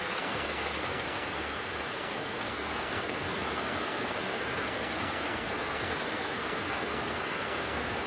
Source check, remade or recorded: remade